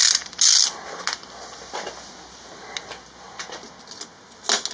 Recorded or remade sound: recorded